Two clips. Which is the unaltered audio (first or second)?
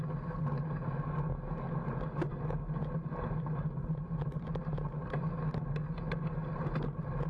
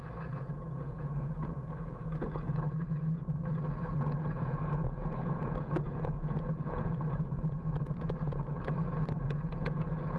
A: first